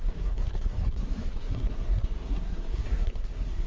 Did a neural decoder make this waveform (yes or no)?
yes